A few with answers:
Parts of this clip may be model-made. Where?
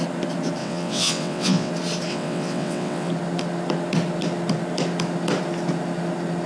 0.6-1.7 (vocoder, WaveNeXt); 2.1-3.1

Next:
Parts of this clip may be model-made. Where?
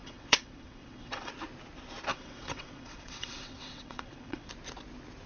0.0-1.3 (vocoder, WaveNeXt); 2.1-4.5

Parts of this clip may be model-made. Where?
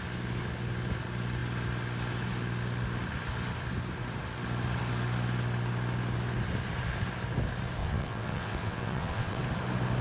7.8-9.4 (vocoder, WaveNeXt)